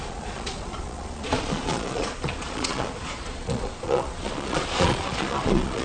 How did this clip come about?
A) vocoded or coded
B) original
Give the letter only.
A